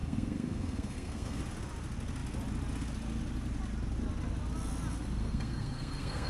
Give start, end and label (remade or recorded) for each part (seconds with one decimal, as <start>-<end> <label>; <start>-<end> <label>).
0.0-1.4 remade; 1.4-5.2 recorded; 5.2-6.3 remade